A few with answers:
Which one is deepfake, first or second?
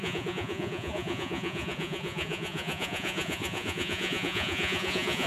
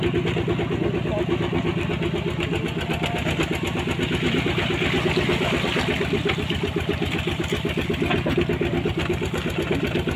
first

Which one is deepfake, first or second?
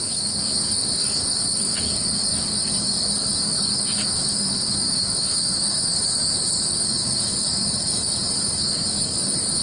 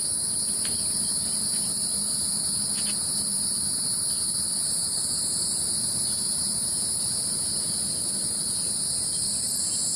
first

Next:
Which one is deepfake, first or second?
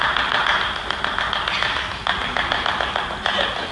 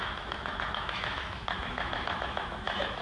second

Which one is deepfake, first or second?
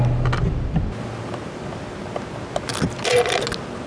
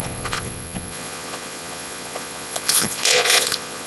second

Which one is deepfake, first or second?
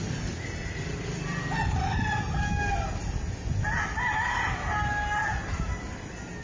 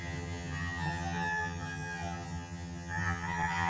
second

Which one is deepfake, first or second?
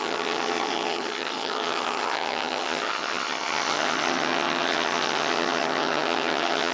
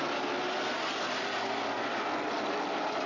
first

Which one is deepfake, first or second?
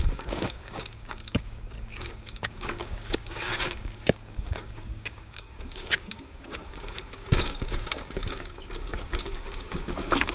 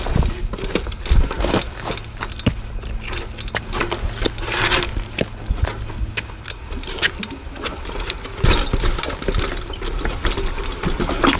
first